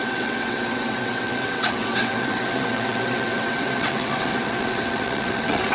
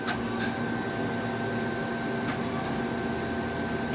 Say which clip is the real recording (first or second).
second